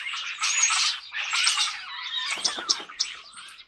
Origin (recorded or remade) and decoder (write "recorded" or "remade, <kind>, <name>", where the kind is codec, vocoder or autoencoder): remade, vocoder, BigVGAN v2